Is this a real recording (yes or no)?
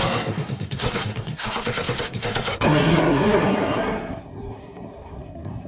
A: no